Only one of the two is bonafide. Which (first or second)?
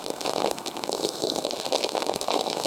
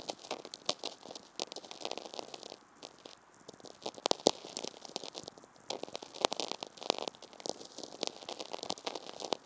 second